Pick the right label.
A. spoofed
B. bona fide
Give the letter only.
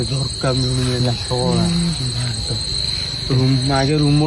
B